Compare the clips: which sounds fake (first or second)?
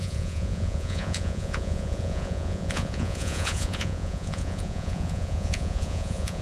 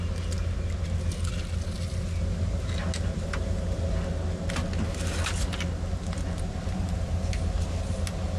first